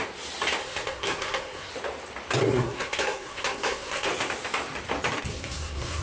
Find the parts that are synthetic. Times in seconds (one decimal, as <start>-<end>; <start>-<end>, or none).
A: 0.6-1.7; 2.5-4.1; 5.3-6.0